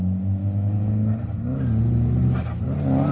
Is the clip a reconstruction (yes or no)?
no